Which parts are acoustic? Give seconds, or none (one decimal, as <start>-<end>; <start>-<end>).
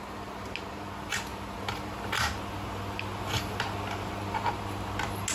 0.0-5.3